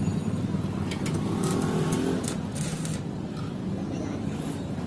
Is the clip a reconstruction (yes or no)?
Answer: no